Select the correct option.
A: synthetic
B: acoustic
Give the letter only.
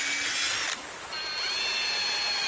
B